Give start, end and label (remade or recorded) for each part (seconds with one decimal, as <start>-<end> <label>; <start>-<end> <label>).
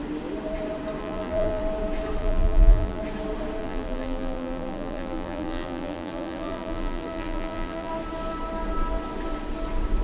0.0-1.0 recorded; 1.0-1.6 remade; 1.6-2.2 recorded; 2.2-3.0 remade; 3.0-3.6 recorded; 3.6-7.9 remade; 7.9-10.0 recorded